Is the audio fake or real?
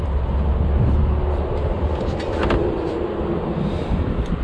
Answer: real